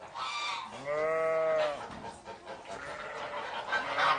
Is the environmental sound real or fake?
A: real